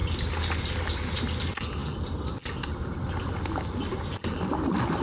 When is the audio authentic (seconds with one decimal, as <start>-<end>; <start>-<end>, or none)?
0.0-5.0